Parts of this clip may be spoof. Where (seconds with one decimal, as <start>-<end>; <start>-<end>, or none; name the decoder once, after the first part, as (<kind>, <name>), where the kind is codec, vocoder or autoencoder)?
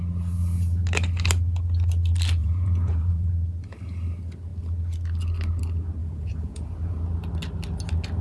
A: 2.4-3.3 (vocoder, Vocos); 6.0-6.7